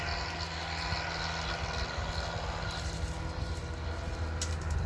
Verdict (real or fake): real